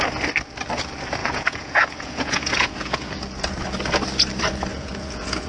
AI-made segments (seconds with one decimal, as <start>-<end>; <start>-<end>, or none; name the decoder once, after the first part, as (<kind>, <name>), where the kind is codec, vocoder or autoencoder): 1.2-3.2 (vocoder, Vocos); 4.7-5.5

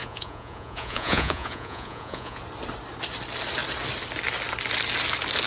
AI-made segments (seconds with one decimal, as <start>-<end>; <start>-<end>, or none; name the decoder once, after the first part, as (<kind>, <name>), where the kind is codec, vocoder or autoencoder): 0.0-2.4 (vocoder, Vocos)